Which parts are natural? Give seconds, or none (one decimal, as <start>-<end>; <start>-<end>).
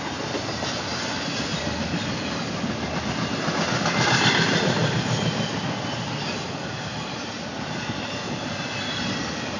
0.0-9.6